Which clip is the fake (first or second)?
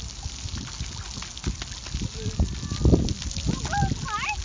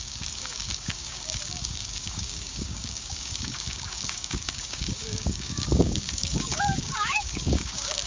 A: second